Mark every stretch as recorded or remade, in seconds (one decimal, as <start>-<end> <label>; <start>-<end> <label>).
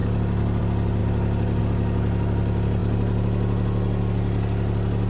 0.0-5.1 recorded